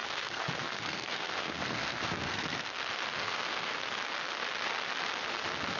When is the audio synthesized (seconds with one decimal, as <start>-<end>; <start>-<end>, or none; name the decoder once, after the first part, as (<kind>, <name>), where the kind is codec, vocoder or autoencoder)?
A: 0.0-2.7 (codec, SNAC); 3.2-3.7